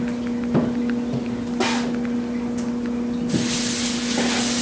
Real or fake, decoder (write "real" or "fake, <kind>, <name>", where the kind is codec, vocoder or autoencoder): real